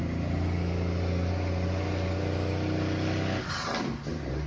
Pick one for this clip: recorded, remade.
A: recorded